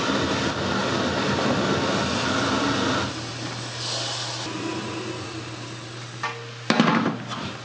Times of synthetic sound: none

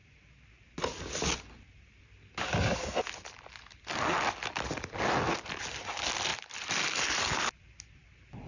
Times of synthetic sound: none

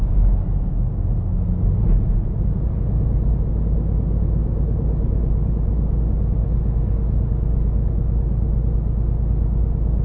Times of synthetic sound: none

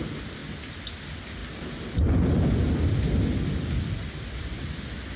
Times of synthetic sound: 1.4-3.0 (vocoder, BigVGAN v2); 3.5-4.4

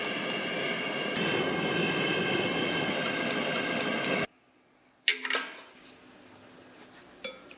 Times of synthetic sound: none